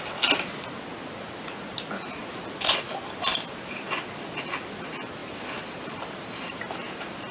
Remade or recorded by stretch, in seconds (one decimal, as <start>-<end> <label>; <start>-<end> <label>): 0.0-5.2 recorded; 5.2-7.3 remade